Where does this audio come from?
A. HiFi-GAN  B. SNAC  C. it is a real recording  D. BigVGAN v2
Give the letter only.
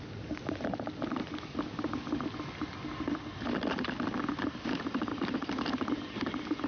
C